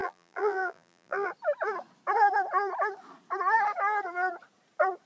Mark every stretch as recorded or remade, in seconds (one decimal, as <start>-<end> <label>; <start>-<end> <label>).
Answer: 0.0-1.3 remade; 1.3-5.1 recorded